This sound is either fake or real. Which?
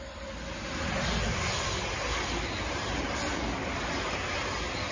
real